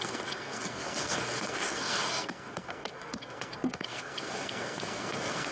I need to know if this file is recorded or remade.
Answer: remade